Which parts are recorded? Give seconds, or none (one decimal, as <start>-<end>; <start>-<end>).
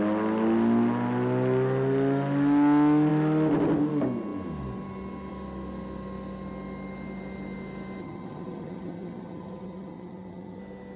0.0-8.0; 10.6-11.0